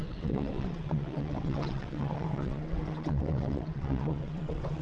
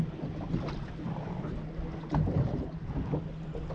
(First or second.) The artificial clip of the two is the first